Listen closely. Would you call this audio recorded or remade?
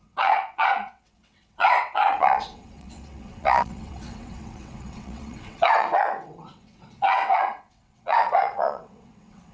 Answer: remade